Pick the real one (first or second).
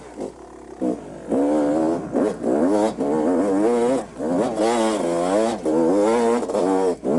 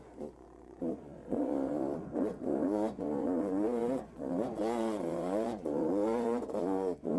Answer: first